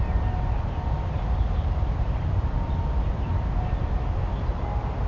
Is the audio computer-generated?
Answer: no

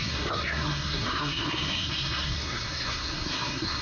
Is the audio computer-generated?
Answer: yes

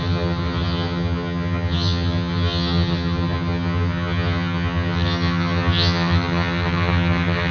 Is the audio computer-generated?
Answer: yes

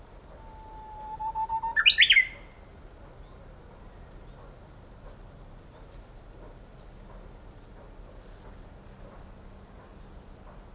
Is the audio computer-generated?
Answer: no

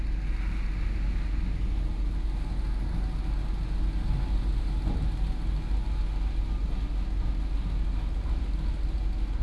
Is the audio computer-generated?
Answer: no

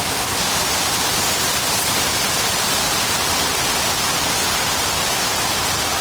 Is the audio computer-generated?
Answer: no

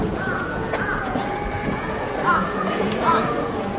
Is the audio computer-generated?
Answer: yes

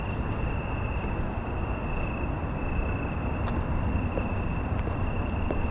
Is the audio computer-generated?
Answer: no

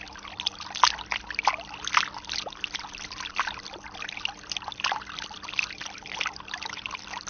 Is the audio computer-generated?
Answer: no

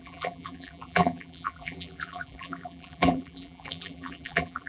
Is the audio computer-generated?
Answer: yes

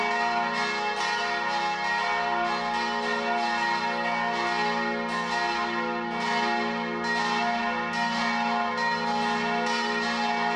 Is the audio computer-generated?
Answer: no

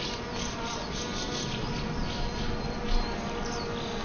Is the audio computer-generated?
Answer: no